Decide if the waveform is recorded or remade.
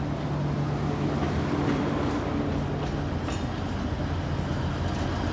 recorded